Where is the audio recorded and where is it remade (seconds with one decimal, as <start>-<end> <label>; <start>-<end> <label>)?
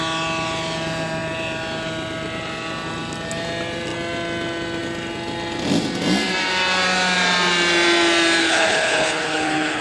0.0-8.4 recorded; 8.4-9.8 remade